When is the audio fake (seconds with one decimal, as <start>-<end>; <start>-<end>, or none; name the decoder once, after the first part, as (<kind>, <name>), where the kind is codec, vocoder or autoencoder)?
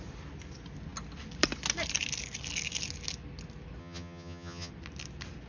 3.8-4.7 (vocoder, HiFi-GAN)